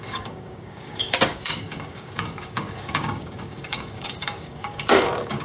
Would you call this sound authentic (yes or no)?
no